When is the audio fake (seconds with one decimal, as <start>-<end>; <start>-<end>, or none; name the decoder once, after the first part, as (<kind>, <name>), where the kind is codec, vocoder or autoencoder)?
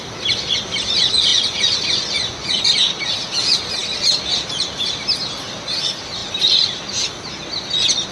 1.3-2.6 (vocoder, Vocos)